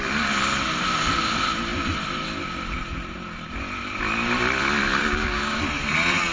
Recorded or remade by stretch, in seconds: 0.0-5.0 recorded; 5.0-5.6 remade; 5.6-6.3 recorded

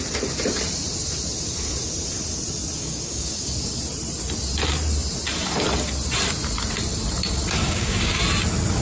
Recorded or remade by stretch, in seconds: 0.0-2.8 recorded; 2.8-3.8 remade; 3.8-7.6 recorded; 7.6-8.2 remade; 8.2-8.8 recorded

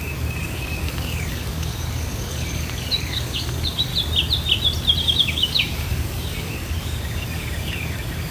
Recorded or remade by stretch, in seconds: 0.0-3.9 remade; 3.9-5.0 recorded; 5.0-8.3 remade

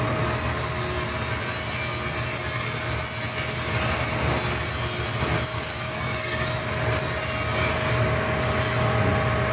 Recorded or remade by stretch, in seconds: 0.0-5.5 recorded; 5.5-6.5 remade; 6.5-9.5 recorded

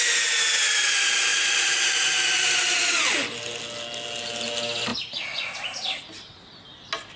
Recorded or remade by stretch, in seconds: 0.0-7.2 recorded